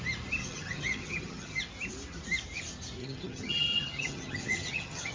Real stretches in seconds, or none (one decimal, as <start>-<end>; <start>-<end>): 0.0-0.4; 1.6-3.0